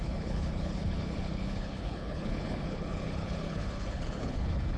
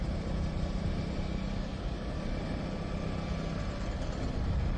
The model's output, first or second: first